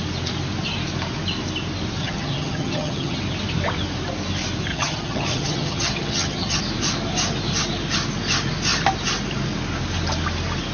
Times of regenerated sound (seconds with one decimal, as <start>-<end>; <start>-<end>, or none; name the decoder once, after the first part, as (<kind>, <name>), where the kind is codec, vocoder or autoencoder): 2.0-3.2 (vocoder, HiFi-GAN); 4.7-6.6